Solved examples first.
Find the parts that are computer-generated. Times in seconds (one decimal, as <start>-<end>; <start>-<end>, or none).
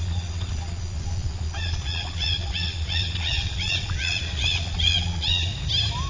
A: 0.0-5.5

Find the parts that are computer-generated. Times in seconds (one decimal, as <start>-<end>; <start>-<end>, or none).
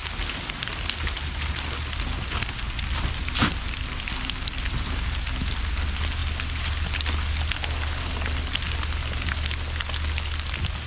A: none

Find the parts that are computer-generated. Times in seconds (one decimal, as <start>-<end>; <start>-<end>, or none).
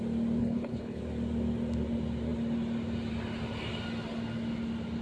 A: 0.4-1.0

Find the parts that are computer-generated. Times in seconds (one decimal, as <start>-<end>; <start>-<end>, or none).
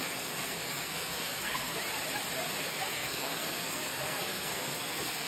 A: 0.0-1.8; 2.6-5.3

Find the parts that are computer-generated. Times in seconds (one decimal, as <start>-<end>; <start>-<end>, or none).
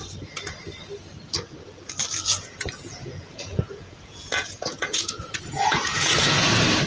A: 2.3-6.4